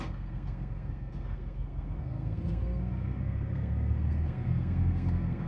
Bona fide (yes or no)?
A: no